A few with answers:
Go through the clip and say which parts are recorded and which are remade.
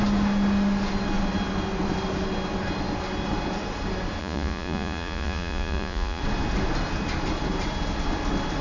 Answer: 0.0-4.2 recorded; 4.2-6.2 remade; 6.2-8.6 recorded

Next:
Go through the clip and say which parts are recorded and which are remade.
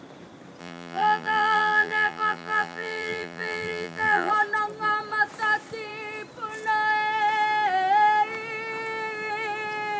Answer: 0.0-0.6 recorded; 0.6-4.3 remade; 4.3-10.0 recorded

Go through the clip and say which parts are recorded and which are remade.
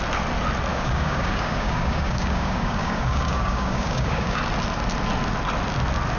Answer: 0.0-0.7 recorded; 0.7-4.4 remade; 4.4-6.2 recorded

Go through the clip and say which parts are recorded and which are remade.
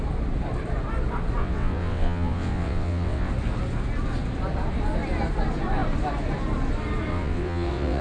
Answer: 0.0-1.4 recorded; 1.4-3.3 remade; 3.3-7.1 recorded; 7.1-8.0 remade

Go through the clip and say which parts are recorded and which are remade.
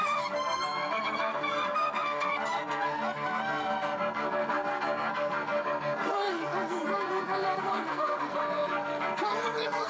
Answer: 0.0-9.9 remade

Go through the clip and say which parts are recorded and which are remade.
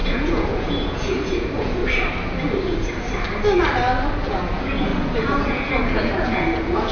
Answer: 0.0-1.8 remade; 1.8-4.4 recorded; 4.4-6.9 remade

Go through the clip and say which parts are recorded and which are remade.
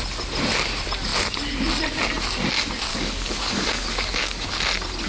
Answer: 0.0-2.9 recorded; 2.9-4.5 remade; 4.5-5.1 recorded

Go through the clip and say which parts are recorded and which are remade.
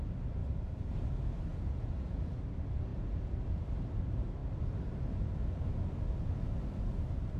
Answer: 0.0-1.5 recorded; 1.5-2.4 remade; 2.4-2.9 recorded; 2.9-3.4 remade; 3.4-7.4 recorded